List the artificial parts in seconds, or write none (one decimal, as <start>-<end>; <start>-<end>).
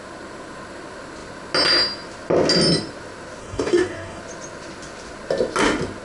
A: 3.4-4.2